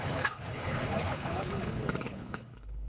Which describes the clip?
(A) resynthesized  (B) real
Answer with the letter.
A